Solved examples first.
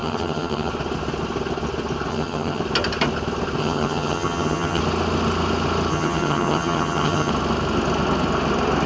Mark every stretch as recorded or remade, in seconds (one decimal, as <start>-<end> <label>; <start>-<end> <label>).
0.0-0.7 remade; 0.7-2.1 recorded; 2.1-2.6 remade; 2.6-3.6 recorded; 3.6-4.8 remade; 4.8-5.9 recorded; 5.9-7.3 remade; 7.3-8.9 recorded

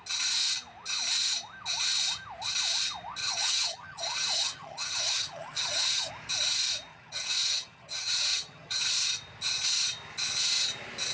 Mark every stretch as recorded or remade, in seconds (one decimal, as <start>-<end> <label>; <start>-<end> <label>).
0.0-3.2 recorded; 3.2-6.1 remade; 6.1-6.9 recorded; 6.9-8.8 remade; 8.8-11.1 recorded

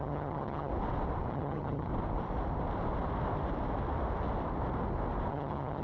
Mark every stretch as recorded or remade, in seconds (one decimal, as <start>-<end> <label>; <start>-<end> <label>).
0.0-0.7 remade; 0.7-1.3 recorded; 1.3-1.9 remade; 1.9-5.3 recorded; 5.3-5.8 remade